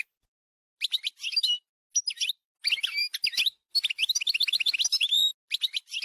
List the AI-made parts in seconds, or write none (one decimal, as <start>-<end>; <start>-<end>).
none